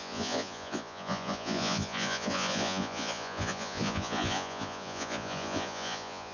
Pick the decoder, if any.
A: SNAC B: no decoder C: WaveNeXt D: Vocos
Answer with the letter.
D